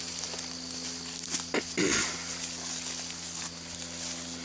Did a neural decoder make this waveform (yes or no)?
no